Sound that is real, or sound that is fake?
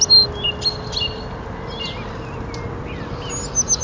real